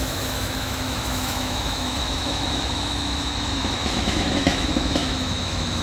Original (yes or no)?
no